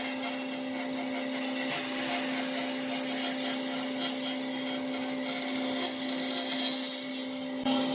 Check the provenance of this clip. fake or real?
real